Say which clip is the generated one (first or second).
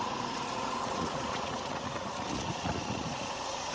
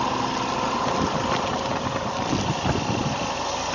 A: first